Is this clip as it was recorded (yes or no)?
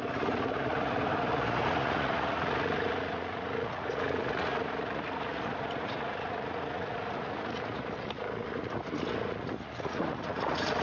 no